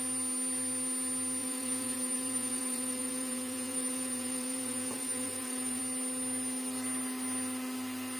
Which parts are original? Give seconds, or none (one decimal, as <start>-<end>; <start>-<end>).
0.0-1.4; 5.8-8.2